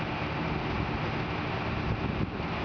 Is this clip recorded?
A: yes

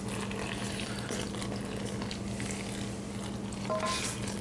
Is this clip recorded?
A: yes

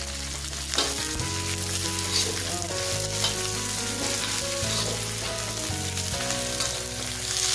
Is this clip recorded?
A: yes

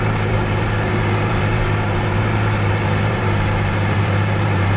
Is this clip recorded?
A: no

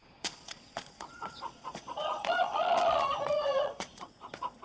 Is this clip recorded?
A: no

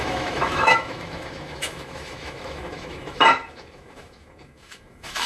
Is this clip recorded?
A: no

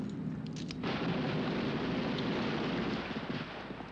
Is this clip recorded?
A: yes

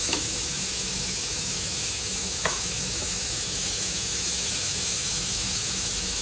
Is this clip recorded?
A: no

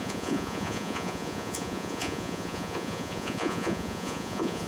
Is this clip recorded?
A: no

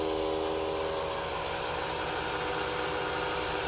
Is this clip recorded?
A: yes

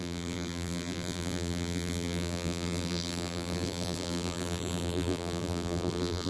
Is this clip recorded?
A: no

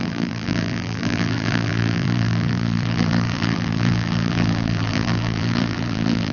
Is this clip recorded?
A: no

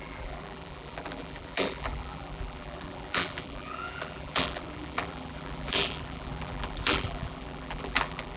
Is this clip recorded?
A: no